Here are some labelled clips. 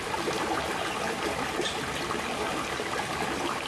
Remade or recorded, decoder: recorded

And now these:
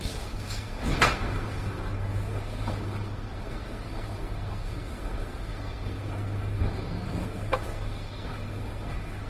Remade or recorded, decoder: remade, codec, SNAC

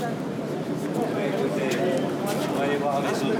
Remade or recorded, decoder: recorded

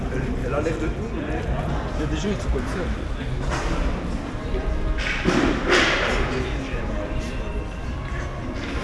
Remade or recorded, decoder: recorded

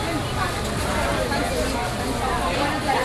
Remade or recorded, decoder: recorded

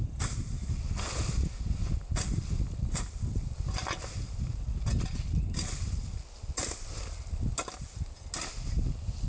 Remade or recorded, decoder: recorded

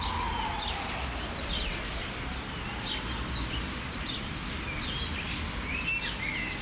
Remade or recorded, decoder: recorded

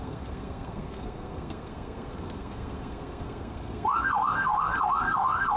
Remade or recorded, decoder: remade, codec, SNAC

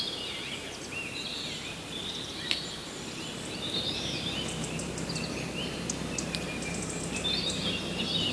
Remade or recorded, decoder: recorded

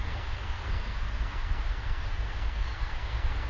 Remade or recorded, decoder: remade, codec, SNAC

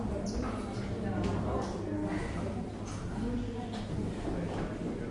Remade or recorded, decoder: recorded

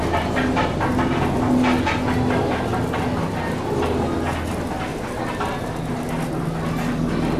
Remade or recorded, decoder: recorded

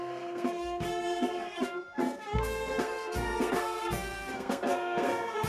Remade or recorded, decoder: remade, codec, SNAC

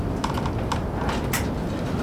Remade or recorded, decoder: recorded